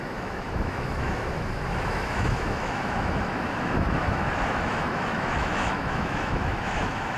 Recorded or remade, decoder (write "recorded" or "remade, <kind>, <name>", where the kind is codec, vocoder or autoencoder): remade, autoencoder, DAC-VAE